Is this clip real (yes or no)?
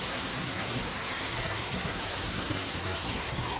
no